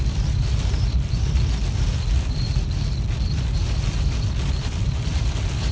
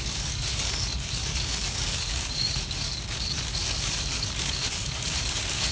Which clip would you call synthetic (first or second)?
second